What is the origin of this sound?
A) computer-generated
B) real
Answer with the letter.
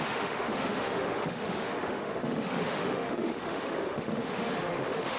A